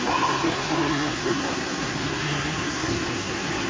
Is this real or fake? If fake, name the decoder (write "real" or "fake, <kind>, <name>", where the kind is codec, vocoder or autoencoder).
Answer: fake, codec, SNAC